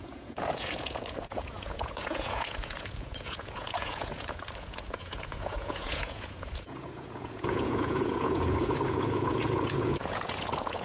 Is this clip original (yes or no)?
no